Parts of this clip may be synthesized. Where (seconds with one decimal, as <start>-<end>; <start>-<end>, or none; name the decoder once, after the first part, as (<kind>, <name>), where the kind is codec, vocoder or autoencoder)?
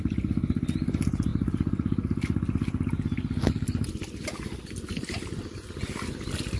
none